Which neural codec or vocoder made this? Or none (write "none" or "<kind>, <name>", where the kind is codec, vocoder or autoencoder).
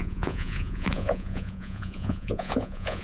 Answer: vocoder, Vocos